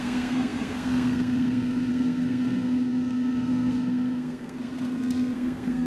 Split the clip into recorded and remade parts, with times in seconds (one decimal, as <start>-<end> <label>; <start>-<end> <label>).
0.0-5.9 remade